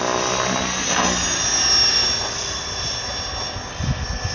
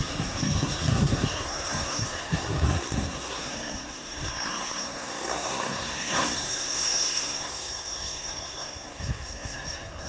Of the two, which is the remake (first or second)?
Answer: second